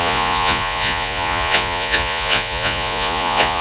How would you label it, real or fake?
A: fake